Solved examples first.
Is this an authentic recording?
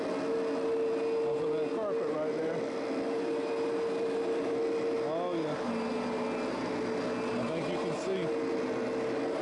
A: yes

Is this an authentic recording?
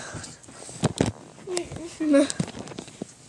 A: yes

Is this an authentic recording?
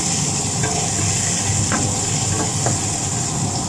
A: yes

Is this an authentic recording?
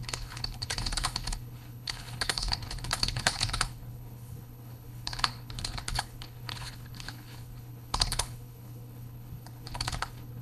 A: no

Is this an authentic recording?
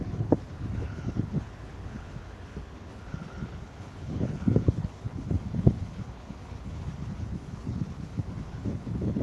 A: no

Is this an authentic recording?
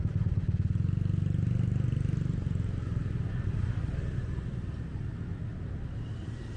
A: yes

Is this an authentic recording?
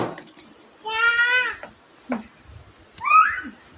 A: yes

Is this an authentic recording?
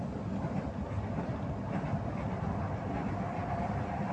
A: yes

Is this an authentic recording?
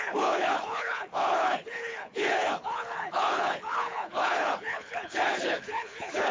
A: no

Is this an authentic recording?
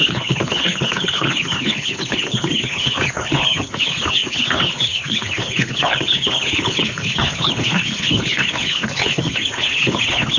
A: no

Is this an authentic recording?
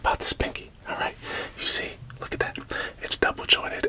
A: yes